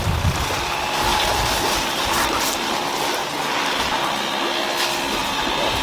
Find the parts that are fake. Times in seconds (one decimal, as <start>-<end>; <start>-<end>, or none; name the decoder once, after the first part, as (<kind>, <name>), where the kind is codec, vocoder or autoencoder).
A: 5.2-5.8 (vocoder, BigVGAN v2)